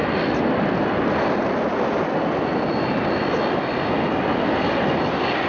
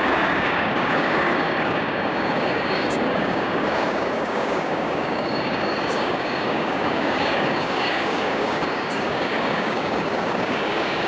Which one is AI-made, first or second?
second